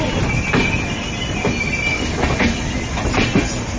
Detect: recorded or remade recorded